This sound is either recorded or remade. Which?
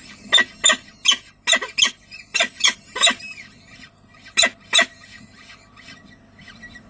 recorded